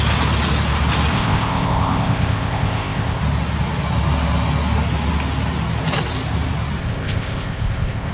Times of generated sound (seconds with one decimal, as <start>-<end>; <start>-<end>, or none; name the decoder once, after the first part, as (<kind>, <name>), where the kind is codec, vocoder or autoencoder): 1.1-3.2 (codec, ZipCodec); 6.8-8.1